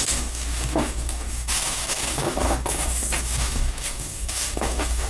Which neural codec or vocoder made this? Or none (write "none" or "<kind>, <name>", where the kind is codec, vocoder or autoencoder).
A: codec, DAC